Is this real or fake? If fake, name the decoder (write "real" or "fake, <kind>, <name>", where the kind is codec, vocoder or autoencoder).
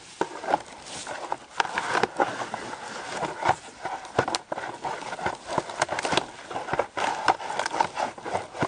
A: real